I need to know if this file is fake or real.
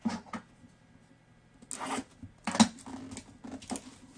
real